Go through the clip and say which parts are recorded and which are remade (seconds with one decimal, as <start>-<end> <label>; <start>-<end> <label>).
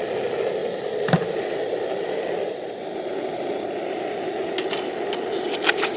0.0-6.0 recorded